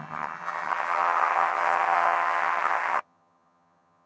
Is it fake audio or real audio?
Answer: fake